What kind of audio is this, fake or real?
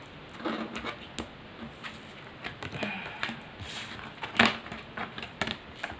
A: real